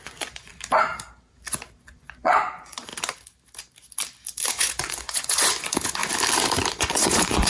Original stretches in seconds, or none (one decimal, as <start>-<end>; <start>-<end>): 0.5-1.8; 2.9-4.5; 6.0-6.7